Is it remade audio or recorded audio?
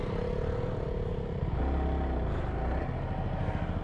recorded